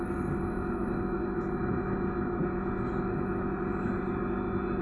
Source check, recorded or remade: recorded